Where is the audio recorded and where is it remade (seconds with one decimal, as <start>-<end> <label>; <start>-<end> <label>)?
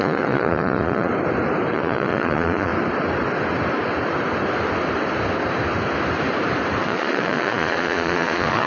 0.0-1.1 remade; 1.1-1.7 recorded; 1.7-2.7 remade; 2.7-6.8 recorded; 6.8-8.7 remade